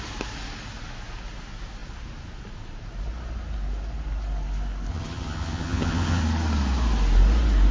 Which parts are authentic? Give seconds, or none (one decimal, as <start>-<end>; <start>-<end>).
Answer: 0.0-4.9; 6.2-7.7